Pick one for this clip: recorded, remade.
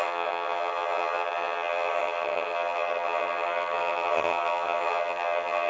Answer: remade